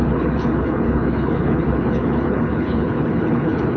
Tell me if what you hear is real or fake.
fake